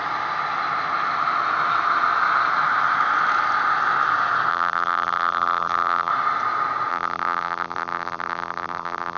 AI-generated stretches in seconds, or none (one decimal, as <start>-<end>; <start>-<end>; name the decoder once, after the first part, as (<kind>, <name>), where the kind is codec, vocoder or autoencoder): 4.5-6.1 (vocoder, BigVGAN v2); 6.9-9.2